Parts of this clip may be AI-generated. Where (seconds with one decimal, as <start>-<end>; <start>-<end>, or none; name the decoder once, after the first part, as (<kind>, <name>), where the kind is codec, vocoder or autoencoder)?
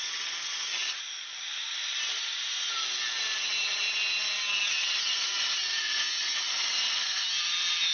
none